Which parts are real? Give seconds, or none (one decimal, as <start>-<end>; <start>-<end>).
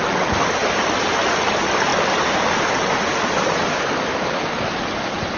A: 0.0-5.4